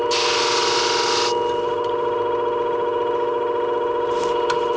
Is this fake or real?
real